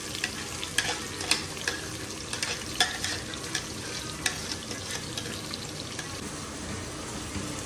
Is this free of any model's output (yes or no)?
yes